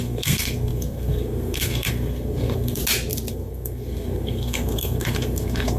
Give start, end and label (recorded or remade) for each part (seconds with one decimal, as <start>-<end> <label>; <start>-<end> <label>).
0.0-2.8 remade; 2.8-3.3 recorded; 3.3-5.8 remade